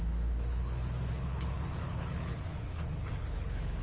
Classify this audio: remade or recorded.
remade